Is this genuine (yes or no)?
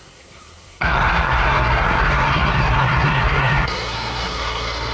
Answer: no